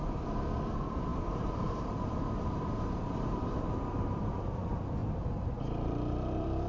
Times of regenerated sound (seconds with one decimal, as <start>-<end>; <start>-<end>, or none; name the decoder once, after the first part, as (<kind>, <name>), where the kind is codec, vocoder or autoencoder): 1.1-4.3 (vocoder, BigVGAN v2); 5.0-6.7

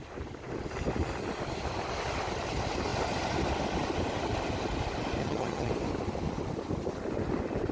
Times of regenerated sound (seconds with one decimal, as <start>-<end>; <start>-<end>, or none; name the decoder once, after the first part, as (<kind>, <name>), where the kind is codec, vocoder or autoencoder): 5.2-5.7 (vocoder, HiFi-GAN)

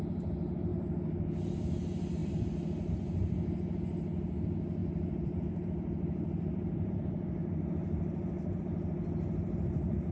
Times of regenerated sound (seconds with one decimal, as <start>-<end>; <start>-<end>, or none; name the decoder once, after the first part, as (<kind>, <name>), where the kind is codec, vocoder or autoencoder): 2.2-2.9 (vocoder, BigVGAN v2); 4.8-6.9